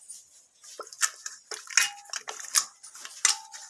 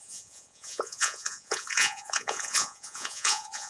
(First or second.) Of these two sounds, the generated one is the second